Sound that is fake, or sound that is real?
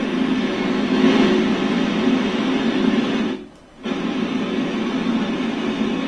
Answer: real